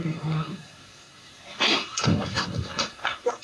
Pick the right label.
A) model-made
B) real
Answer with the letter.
A